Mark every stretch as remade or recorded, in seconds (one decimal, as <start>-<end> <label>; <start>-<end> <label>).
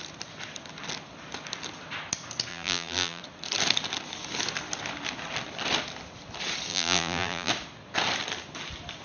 0.0-2.5 recorded; 2.5-3.2 remade; 3.2-6.7 recorded; 6.7-7.5 remade; 7.5-9.0 recorded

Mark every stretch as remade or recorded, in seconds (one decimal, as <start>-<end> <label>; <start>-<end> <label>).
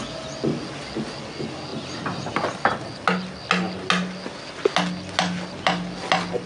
0.0-1.7 recorded; 1.7-2.3 remade; 2.3-6.5 recorded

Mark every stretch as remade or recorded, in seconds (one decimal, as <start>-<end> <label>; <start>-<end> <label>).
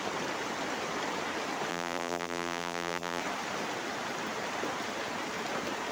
0.0-1.7 recorded; 1.7-3.2 remade; 3.2-5.9 recorded